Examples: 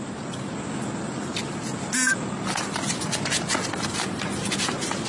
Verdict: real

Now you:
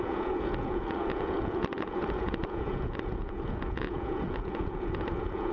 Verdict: fake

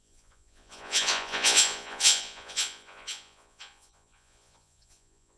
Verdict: fake